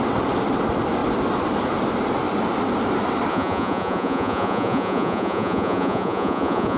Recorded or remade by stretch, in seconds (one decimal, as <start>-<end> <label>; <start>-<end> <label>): 0.0-3.3 recorded; 3.3-6.8 remade